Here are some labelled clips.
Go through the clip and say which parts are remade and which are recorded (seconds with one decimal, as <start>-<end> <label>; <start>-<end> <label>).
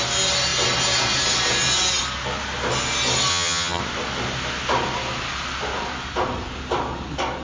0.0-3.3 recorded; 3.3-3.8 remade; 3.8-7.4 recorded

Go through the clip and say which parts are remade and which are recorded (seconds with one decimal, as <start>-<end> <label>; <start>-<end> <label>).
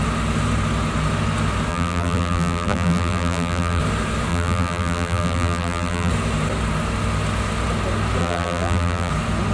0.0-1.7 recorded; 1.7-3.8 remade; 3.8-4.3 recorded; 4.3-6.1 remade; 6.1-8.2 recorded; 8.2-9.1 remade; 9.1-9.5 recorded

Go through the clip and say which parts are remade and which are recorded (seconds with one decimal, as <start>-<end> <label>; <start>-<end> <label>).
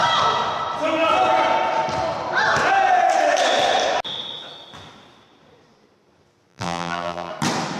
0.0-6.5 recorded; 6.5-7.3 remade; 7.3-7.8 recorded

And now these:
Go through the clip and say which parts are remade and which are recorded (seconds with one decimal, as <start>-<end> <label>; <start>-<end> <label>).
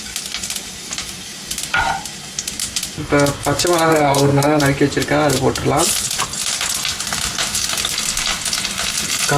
0.0-3.9 recorded; 3.9-4.6 remade; 4.6-9.4 recorded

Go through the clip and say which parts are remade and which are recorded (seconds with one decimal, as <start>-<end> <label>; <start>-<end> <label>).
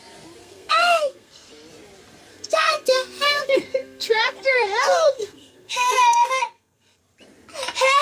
0.0-0.4 recorded; 0.4-1.5 remade; 1.5-2.3 recorded; 2.3-7.0 remade; 7.0-8.0 recorded